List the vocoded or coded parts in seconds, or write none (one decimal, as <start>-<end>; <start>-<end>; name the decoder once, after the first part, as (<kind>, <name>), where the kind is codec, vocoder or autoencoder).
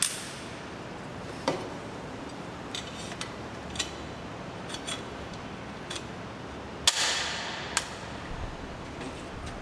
1.1-3.8 (vocoder, BigVGAN v2)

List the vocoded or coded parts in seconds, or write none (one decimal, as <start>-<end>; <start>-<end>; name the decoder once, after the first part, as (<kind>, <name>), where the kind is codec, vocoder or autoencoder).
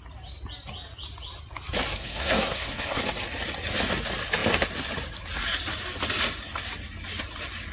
2.0-3.0 (codec, SNAC)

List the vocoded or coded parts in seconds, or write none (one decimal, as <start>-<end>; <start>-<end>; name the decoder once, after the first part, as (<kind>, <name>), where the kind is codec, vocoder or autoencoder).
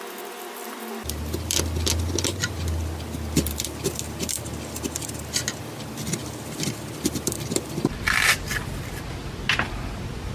none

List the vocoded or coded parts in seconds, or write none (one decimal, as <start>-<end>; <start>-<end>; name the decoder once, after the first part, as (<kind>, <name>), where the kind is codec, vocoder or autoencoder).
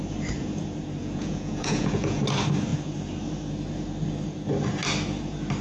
1.0-2.2 (vocoder, Vocos)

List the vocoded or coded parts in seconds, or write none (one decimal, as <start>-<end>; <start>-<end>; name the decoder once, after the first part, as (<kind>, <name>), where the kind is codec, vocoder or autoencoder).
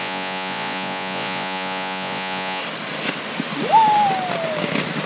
0.0-2.6 (vocoder, Vocos)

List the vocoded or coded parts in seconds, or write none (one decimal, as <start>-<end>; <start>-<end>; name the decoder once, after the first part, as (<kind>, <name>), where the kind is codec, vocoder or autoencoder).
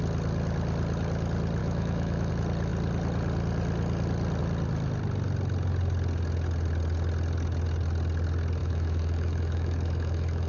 1.6-2.3 (autoencoder, DAC-VAE); 8.6-10.5